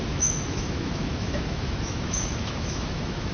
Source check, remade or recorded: remade